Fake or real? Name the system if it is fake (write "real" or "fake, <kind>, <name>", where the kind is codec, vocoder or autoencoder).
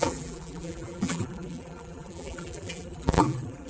fake, vocoder, BigVGAN v2